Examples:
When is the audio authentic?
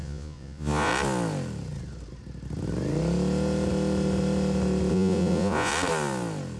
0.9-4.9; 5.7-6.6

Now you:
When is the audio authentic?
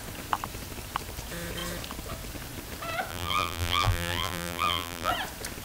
0.0-3.1; 5.1-5.6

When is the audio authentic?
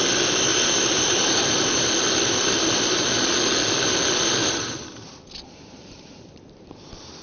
0.0-0.5; 1.7-4.4; 6.5-7.2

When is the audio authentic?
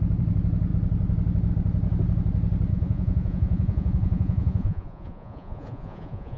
0.0-2.7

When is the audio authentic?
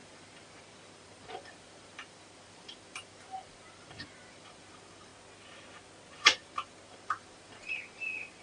5.1-6.1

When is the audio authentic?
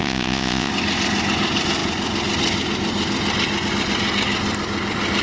0.7-5.2